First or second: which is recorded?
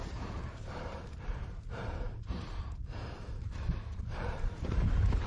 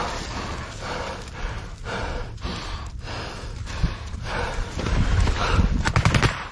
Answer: second